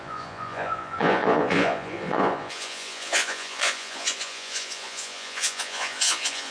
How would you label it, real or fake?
fake